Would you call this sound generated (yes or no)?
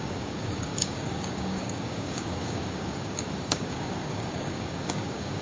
yes